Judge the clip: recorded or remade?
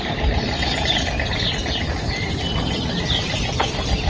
recorded